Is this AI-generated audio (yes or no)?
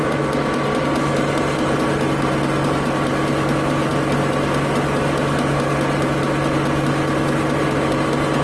no